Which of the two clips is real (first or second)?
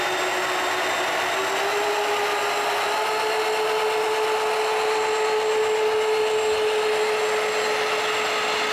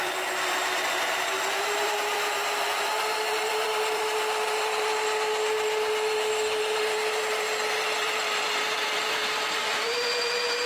first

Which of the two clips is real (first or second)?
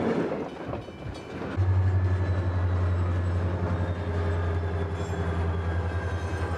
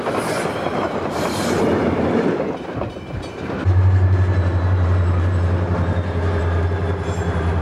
first